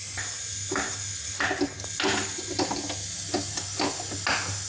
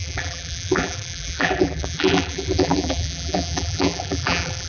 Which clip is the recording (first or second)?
first